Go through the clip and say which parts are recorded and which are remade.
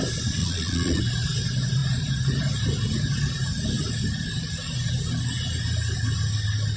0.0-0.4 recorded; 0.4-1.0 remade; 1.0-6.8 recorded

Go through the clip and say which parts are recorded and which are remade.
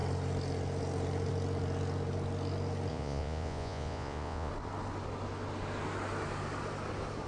0.0-2.9 recorded; 2.9-4.5 remade; 4.5-7.3 recorded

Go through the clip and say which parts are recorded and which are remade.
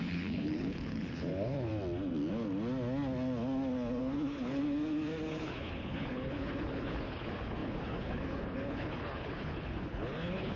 0.0-1.7 remade; 1.7-4.0 recorded; 4.0-4.6 remade; 4.6-5.3 recorded; 5.3-10.6 remade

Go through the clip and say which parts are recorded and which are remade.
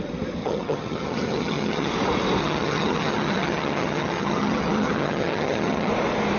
0.0-0.4 recorded; 0.4-1.9 remade; 1.9-2.4 recorded; 2.4-5.9 remade; 5.9-6.4 recorded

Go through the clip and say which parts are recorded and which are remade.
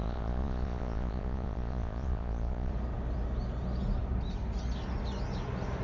0.0-2.7 remade; 2.7-5.8 recorded